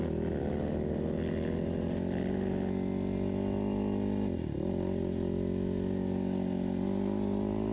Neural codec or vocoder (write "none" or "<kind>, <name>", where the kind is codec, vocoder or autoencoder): none